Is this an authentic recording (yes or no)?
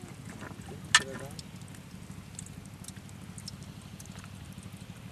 yes